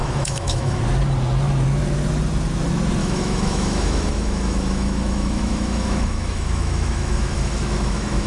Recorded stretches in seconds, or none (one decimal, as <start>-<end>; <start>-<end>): 0.8-3.0